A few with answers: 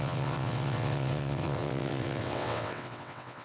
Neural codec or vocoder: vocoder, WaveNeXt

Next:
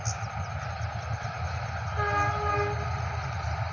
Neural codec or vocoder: none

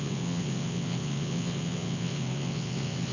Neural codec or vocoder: vocoder, WaveNeXt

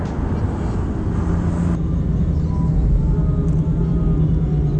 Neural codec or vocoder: none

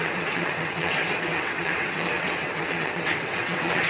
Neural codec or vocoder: vocoder, WaveNeXt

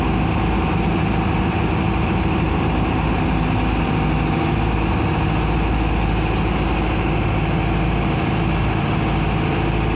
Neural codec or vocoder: none